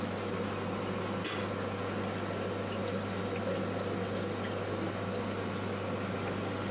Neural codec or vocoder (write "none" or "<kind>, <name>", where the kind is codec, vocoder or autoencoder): none